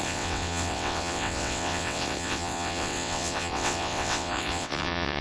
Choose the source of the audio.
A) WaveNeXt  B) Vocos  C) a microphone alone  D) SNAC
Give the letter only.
A